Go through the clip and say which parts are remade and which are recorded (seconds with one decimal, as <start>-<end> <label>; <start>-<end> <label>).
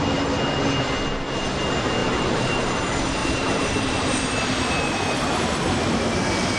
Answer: 0.0-2.0 recorded; 2.0-2.7 remade; 2.7-3.2 recorded; 3.2-4.2 remade; 4.2-6.6 recorded